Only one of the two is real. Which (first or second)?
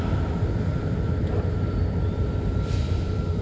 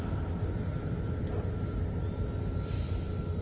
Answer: second